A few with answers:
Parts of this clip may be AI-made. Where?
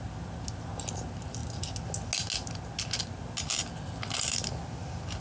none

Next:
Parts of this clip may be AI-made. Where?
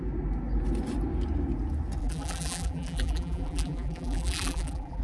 2.0-5.0 (vocoder, BigVGAN v2)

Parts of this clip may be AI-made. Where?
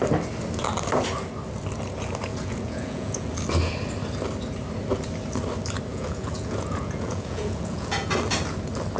2.3-3.3 (vocoder, Vocos); 5.9-8.1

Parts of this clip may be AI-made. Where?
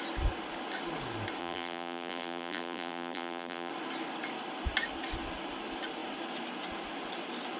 1.4-3.7 (vocoder, BigVGAN v2)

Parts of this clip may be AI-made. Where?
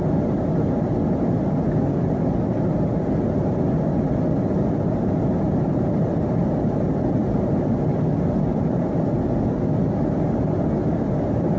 7.2-7.8 (vocoder, BigVGAN v2)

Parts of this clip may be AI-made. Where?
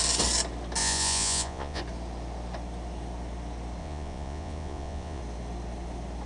0.8-1.8 (vocoder, Vocos); 3.8-5.2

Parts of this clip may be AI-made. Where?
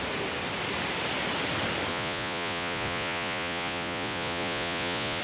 1.9-5.2 (vocoder, Vocos)